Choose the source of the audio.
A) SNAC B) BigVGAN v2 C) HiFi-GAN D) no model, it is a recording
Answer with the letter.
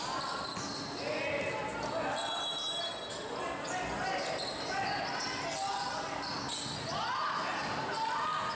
D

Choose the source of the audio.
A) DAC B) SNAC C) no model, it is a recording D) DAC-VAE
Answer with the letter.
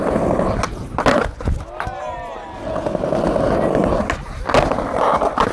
C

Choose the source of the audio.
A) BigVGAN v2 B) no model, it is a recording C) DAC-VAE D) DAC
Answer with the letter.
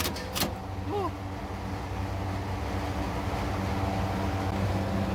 B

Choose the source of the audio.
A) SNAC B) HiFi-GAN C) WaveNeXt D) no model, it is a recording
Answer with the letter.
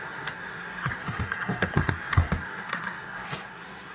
A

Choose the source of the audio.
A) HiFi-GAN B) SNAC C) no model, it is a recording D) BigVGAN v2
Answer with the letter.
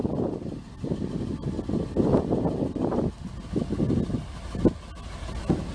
C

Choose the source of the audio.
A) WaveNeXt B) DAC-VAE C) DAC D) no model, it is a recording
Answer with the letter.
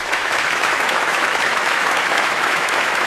B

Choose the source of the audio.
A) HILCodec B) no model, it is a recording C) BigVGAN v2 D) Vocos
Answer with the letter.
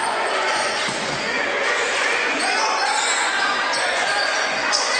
D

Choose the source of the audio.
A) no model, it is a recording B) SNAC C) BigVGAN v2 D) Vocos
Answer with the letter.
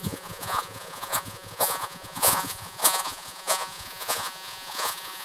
D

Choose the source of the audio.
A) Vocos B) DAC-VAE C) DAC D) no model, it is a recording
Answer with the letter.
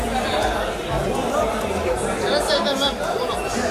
D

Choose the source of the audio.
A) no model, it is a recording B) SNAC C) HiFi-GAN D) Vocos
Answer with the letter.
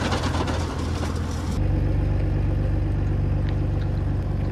A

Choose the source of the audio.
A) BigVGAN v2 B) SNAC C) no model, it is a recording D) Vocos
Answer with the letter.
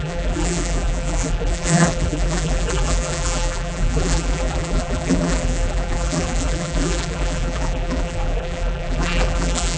A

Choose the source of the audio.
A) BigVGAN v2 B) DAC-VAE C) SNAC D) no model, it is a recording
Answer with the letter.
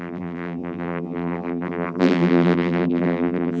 A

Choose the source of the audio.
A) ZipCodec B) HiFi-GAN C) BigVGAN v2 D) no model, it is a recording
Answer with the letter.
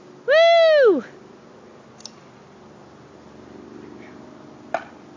D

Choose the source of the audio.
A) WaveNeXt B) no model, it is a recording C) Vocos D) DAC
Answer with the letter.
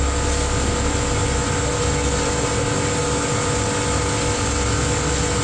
B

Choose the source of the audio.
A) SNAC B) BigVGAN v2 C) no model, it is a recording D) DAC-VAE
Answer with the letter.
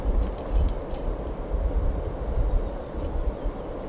C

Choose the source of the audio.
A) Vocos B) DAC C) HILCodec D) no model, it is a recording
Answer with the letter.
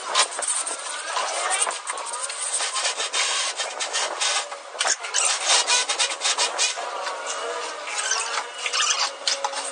D